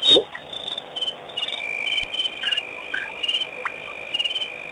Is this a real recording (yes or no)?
yes